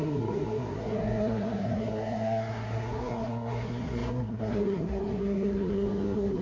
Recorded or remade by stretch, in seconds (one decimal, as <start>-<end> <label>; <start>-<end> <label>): 0.0-6.4 remade